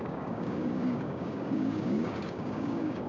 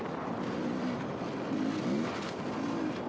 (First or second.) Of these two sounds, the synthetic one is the first